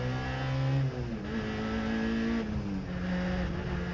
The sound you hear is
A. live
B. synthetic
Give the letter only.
A